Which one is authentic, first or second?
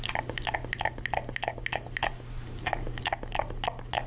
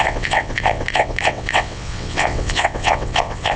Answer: first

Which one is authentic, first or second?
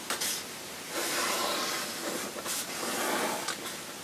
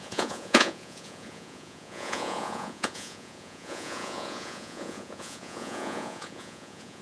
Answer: first